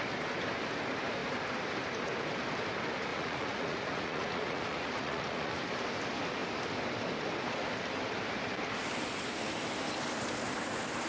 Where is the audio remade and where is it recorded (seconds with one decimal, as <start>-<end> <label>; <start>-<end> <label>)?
0.0-3.1 recorded; 3.1-5.7 remade; 5.7-11.1 recorded